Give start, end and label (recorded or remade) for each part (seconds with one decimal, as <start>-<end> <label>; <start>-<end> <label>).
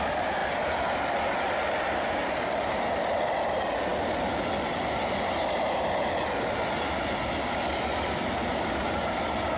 0.0-9.6 recorded